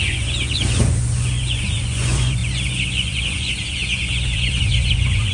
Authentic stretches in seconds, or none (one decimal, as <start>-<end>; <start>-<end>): none